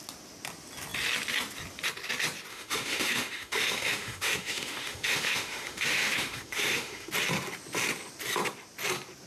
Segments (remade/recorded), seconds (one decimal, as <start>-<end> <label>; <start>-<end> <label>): 0.0-2.5 recorded; 2.5-7.1 remade; 7.1-9.3 recorded